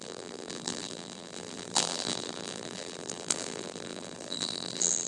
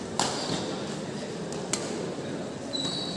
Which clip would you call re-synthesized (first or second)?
first